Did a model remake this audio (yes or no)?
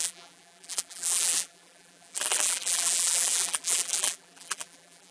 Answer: yes